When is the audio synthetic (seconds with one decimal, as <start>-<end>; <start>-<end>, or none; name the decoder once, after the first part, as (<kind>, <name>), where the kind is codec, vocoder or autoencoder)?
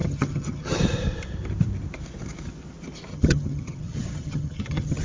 0.0-0.8 (vocoder, HiFi-GAN); 3.1-5.0